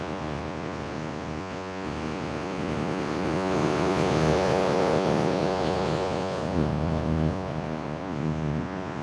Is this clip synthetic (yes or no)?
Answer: yes